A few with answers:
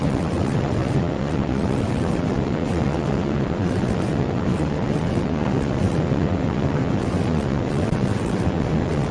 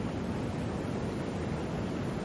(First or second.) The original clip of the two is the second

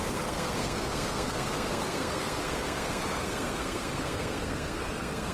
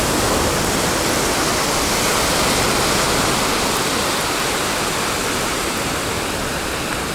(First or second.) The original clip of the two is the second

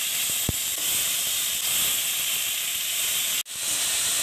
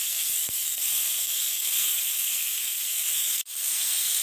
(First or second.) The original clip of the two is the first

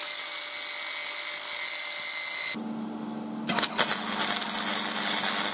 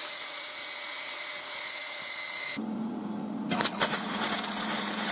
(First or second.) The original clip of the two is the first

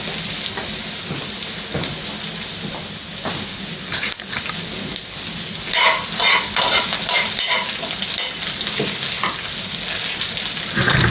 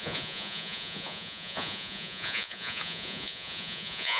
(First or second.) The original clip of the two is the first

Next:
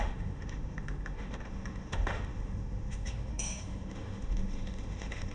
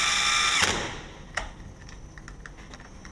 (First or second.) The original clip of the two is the second